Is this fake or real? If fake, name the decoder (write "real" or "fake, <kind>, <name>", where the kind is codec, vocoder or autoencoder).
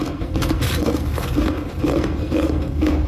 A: fake, codec, SNAC